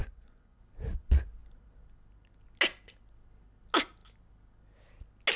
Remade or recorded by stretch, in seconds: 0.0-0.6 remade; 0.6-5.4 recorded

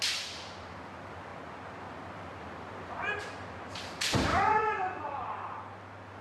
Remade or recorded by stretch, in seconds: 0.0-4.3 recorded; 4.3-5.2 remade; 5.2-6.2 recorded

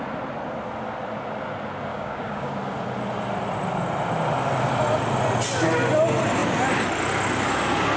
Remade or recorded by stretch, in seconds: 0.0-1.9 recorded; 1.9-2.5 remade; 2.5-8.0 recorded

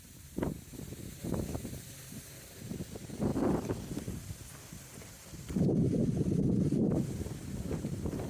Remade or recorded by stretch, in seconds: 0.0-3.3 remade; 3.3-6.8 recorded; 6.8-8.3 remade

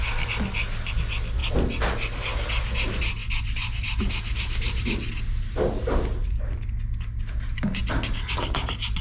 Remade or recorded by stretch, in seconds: 0.0-9.0 recorded

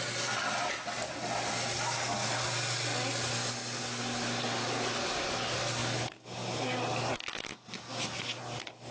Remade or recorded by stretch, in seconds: 0.0-8.9 recorded

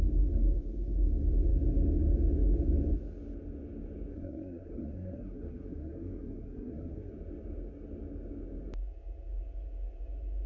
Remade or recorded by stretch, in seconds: 0.0-4.1 recorded; 4.1-7.1 remade; 7.1-10.5 recorded